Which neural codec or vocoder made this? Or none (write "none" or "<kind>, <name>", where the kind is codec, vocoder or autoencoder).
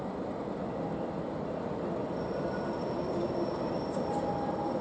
none